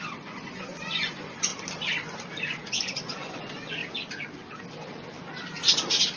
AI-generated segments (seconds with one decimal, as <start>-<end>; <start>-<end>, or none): 0.0-1.5; 2.8-3.8